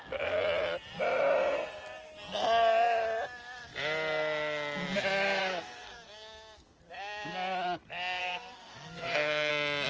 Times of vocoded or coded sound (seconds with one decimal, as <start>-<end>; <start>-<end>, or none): 5.4-6.8; 8.2-9.5